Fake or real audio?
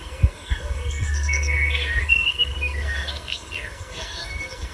fake